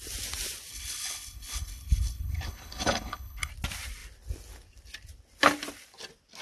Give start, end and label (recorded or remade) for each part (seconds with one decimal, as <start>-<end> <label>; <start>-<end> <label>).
0.0-0.7 recorded; 0.7-3.5 remade; 3.5-6.4 recorded